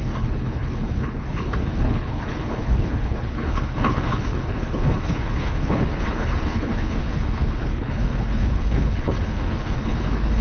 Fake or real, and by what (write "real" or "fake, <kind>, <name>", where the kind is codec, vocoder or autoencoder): fake, codec, HILCodec